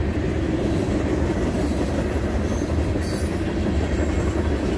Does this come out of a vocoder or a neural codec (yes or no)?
no